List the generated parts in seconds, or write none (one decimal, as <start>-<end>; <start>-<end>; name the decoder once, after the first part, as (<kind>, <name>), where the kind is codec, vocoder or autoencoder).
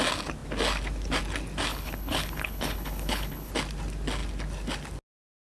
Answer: 1.7-3.5 (codec, HILCodec)